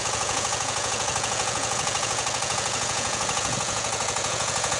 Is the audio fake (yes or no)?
yes